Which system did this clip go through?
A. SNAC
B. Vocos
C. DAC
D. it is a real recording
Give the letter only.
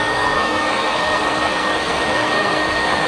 A